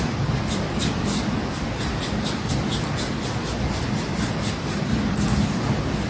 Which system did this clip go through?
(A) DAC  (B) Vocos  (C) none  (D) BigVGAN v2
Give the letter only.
C